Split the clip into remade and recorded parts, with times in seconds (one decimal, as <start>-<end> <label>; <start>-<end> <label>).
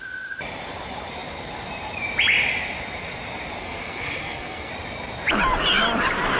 0.0-3.6 recorded; 3.6-4.7 remade; 4.7-6.4 recorded